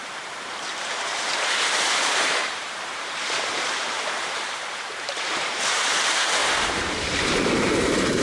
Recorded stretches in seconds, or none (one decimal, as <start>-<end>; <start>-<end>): none

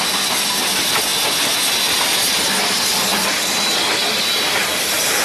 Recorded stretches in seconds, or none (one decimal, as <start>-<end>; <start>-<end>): 0.0-5.2